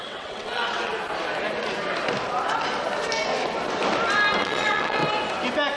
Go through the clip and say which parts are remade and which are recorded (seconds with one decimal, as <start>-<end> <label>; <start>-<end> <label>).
0.0-0.9 remade; 0.9-4.4 recorded; 4.4-5.0 remade; 5.0-5.8 recorded